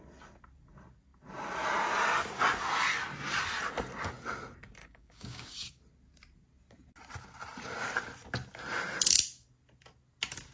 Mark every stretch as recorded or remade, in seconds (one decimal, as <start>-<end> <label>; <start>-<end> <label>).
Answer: 0.0-4.8 recorded; 4.8-5.8 remade; 5.8-10.5 recorded